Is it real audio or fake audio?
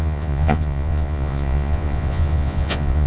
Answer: fake